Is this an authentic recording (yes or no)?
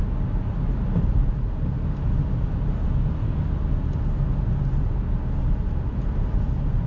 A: yes